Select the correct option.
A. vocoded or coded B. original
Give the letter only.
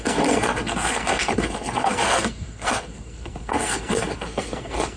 A